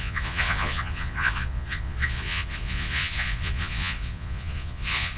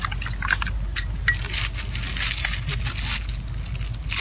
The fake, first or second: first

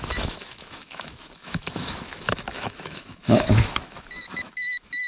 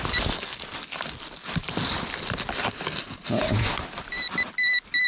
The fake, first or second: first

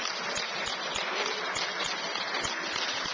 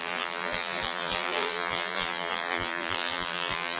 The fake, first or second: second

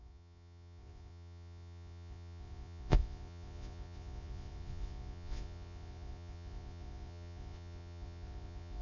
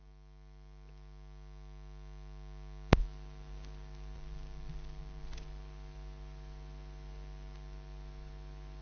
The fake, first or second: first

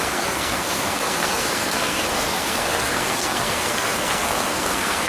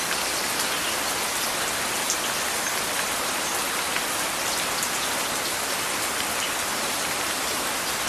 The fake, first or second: first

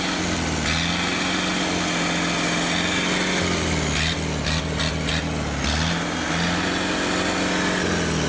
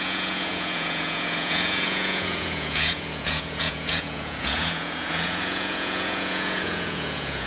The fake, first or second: second